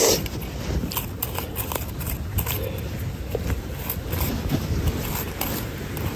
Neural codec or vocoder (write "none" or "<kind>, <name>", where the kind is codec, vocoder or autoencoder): none